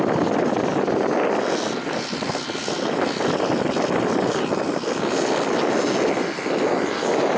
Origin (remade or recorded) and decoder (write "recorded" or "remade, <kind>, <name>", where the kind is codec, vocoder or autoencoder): recorded